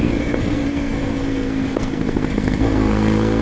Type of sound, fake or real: fake